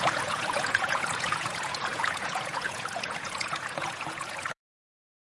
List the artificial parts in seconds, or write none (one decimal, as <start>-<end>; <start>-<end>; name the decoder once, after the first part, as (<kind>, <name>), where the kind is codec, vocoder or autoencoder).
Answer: 0.0-5.3 (vocoder, Vocos)